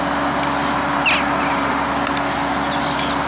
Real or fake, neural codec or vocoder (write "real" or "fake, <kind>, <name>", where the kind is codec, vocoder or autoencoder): real